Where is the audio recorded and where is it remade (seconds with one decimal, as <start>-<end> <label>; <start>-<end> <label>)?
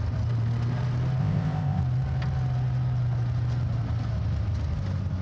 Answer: 0.0-1.2 recorded; 1.2-1.8 remade; 1.8-5.2 recorded